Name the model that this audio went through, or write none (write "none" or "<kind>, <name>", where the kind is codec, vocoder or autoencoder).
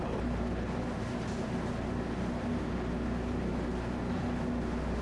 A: none